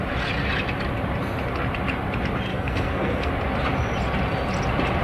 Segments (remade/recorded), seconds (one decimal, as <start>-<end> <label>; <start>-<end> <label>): 0.0-2.5 recorded; 2.5-3.3 remade; 3.3-5.0 recorded